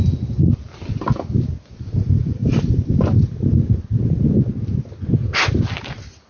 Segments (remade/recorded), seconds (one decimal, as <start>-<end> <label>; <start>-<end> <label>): 0.0-6.3 recorded